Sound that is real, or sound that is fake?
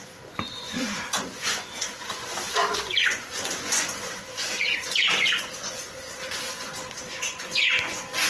fake